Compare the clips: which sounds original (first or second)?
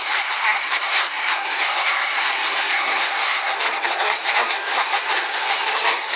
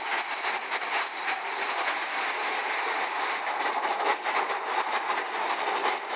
second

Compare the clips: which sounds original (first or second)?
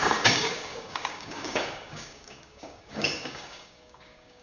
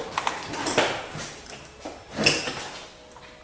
second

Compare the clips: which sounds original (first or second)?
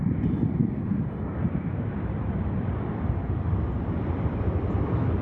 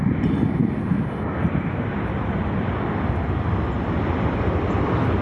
second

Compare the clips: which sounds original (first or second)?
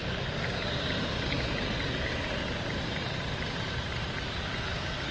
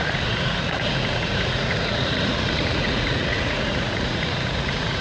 first